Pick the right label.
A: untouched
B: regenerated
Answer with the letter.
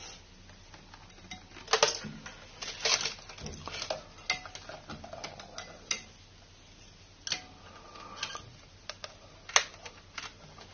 A